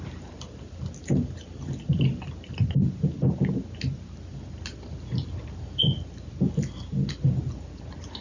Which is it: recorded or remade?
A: recorded